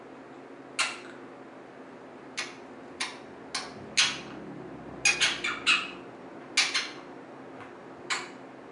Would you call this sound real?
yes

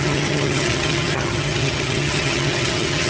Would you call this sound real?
no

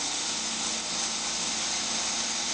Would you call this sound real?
yes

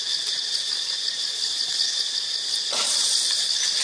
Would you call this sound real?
yes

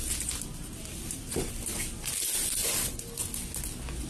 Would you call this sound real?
yes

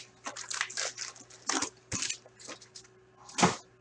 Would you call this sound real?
yes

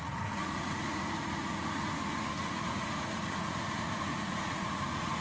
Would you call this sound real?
no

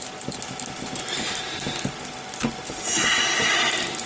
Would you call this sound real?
yes